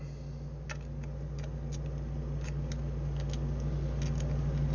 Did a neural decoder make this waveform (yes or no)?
no